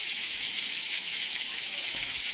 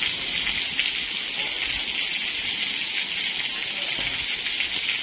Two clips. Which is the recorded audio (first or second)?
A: second